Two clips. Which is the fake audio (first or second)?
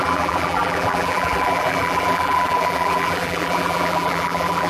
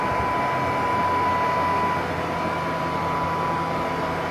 first